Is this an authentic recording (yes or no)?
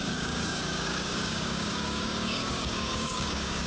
no